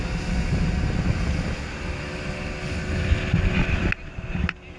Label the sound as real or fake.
real